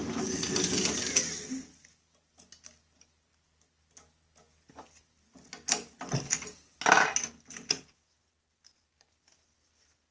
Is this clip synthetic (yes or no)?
no